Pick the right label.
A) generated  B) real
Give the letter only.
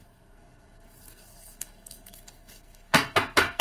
A